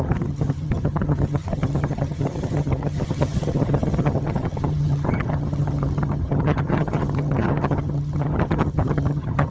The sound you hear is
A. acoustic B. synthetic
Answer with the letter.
B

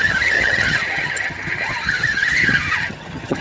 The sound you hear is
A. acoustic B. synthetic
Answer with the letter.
B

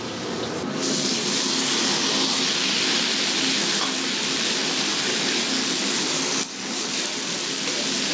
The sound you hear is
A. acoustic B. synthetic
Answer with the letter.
A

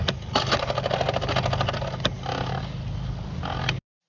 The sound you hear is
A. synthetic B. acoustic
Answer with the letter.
B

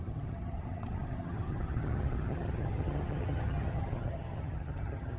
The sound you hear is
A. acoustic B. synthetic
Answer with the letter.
B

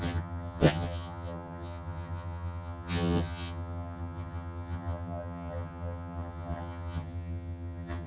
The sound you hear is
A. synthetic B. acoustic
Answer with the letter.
A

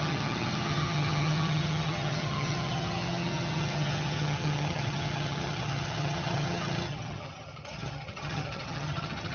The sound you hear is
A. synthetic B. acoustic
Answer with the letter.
A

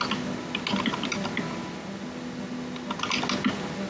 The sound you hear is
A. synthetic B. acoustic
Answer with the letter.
B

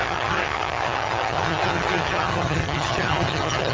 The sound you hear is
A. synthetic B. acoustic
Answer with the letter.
A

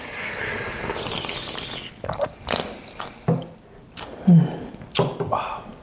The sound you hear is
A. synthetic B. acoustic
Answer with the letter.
B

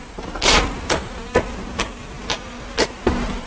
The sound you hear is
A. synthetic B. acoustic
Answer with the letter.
B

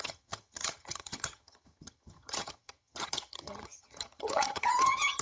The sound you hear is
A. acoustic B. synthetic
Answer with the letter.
B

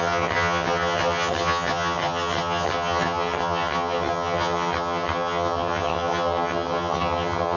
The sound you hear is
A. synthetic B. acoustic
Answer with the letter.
A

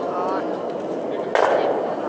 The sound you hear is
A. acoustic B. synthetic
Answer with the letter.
A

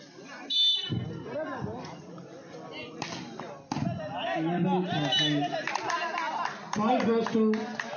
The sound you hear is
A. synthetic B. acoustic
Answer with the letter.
B